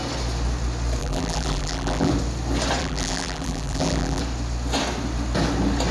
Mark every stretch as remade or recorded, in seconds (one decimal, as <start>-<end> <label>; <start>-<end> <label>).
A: 0.0-1.0 recorded; 1.0-2.1 remade; 2.1-2.8 recorded; 2.8-4.2 remade; 4.2-5.9 recorded

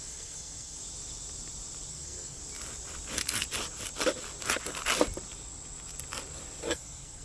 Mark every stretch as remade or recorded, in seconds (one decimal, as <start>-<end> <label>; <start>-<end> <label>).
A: 0.0-0.8 remade; 0.8-1.9 recorded; 1.9-2.4 remade; 2.4-6.7 recorded; 6.7-7.2 remade